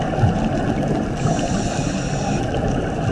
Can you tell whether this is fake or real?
real